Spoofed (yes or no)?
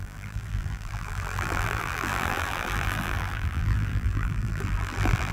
yes